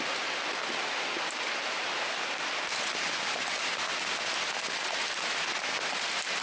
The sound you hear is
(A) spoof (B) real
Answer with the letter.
B